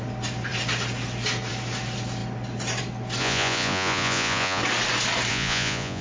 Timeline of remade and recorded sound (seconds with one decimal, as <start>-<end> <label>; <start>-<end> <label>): 0.0-3.2 recorded; 3.2-4.6 remade; 4.6-5.3 recorded; 5.3-6.0 remade